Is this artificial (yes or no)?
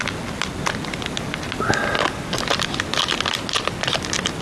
no